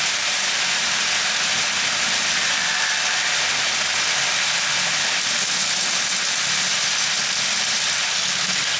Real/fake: real